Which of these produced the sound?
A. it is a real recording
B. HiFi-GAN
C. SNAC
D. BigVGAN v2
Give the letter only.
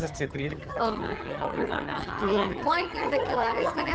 B